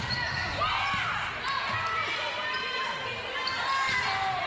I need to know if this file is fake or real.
real